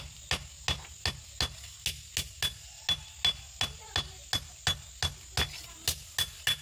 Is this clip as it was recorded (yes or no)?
yes